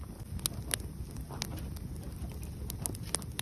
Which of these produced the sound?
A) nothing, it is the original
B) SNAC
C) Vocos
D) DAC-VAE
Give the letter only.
A